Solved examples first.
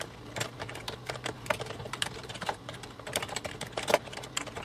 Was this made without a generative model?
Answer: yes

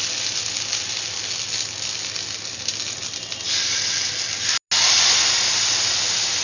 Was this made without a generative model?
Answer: yes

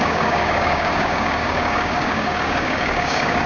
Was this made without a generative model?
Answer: no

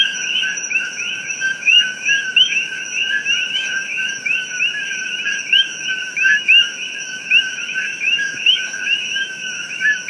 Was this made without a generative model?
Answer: no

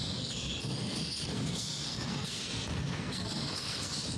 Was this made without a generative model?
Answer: no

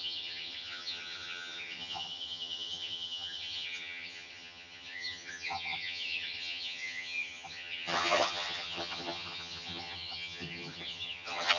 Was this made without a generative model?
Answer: no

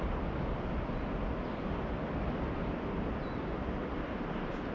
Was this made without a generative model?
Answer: yes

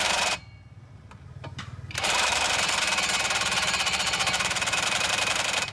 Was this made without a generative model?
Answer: no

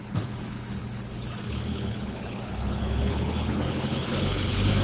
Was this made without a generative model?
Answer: no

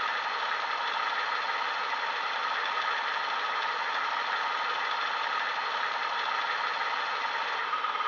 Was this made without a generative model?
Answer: yes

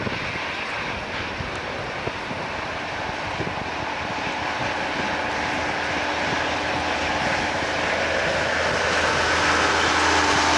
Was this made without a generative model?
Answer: yes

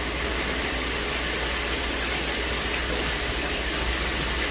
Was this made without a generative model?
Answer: yes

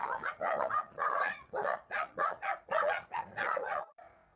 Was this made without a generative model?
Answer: no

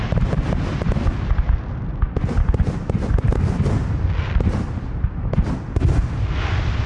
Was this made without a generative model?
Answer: yes